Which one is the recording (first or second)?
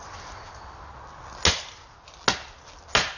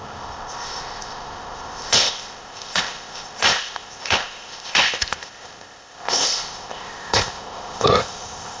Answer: first